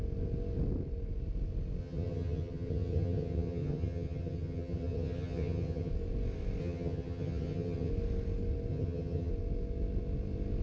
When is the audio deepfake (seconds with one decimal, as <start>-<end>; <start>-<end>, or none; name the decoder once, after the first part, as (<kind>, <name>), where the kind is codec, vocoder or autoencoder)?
1.8-5.9 (vocoder, HiFi-GAN); 6.6-7.9; 8.7-9.3